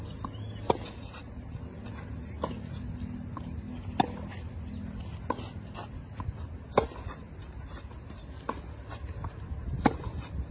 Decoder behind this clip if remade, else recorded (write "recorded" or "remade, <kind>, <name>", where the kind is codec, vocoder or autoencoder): recorded